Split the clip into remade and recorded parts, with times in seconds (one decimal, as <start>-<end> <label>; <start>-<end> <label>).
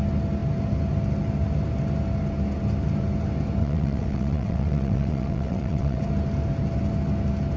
0.0-3.6 recorded; 3.6-6.0 remade; 6.0-7.6 recorded